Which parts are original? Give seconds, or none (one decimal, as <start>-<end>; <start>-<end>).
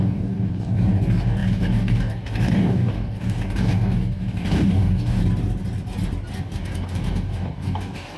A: 5.2-6.4